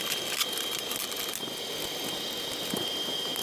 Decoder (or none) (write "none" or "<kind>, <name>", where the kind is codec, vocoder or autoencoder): none